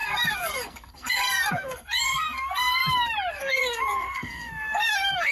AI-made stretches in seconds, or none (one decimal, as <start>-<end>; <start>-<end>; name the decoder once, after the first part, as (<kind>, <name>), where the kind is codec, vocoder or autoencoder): 0.0-2.8 (codec, SNAC); 3.3-5.3